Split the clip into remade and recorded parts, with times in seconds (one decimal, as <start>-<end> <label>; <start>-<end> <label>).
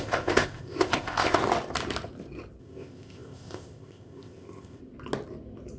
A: 0.0-1.4 remade; 1.4-2.6 recorded; 2.6-4.8 remade; 4.8-5.8 recorded